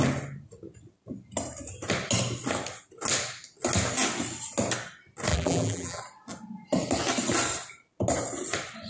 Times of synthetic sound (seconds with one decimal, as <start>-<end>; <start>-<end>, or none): 5.3-6.0